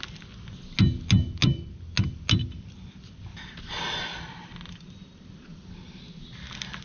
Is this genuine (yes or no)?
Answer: yes